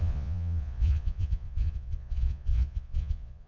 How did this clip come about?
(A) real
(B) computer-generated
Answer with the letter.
B